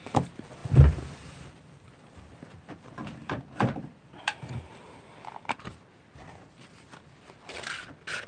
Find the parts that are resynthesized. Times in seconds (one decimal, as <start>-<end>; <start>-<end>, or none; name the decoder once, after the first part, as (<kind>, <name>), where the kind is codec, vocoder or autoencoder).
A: 0.6-4.4 (vocoder, BigVGAN v2)